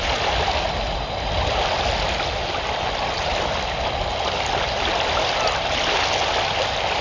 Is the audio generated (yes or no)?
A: no